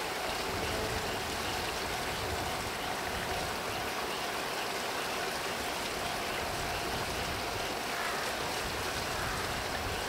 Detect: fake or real real